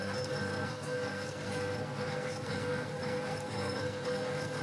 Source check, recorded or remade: remade